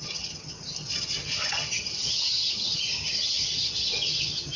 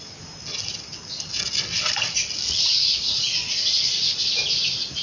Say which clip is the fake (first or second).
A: first